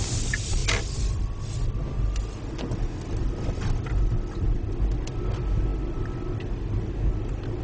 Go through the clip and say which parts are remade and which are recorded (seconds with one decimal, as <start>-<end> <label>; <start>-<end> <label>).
0.0-7.6 recorded